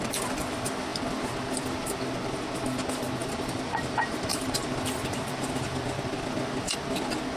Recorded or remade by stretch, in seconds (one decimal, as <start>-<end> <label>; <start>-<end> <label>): 0.0-3.2 recorded; 3.2-4.7 remade; 4.7-7.4 recorded